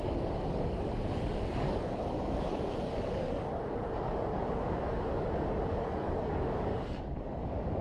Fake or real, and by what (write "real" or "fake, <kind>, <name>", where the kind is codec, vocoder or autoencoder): fake, codec, DAC